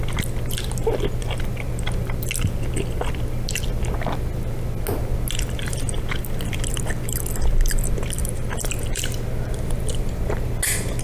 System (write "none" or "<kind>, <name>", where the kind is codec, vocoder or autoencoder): none